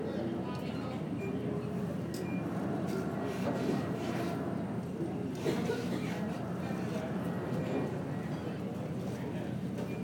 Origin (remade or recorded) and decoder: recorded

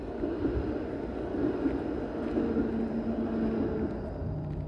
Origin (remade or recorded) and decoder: recorded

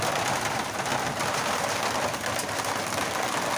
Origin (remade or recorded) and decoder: recorded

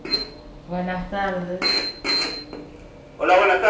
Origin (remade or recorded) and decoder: recorded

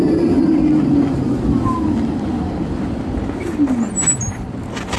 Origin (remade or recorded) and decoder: recorded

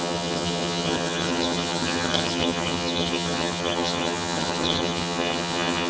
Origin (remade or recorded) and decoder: remade, vocoder, HiFi-GAN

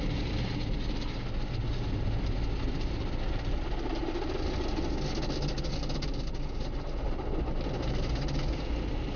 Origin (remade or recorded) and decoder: recorded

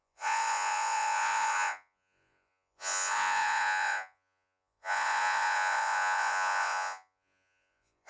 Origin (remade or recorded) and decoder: remade, vocoder, Vocos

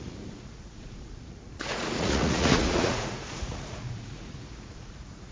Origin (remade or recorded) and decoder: remade, vocoder, Vocos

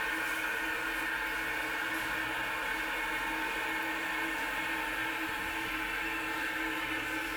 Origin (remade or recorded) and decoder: recorded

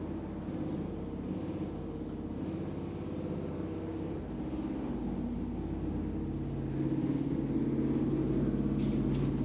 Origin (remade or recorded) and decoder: recorded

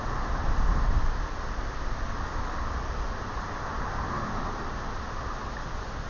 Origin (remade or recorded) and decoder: recorded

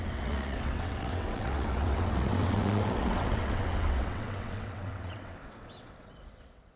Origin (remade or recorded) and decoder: remade, vocoder, WaveNeXt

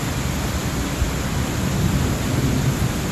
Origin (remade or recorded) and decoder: recorded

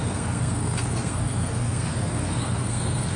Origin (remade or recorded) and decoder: remade, codec, SNAC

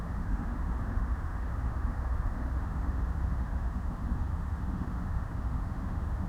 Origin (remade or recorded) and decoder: remade, autoencoder, DAC-VAE